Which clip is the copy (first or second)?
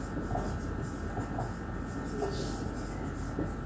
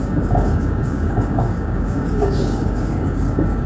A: second